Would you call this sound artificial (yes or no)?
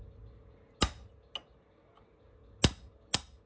no